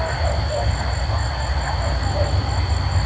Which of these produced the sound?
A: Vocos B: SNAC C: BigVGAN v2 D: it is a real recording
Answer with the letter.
D